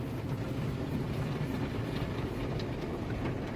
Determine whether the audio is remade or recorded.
recorded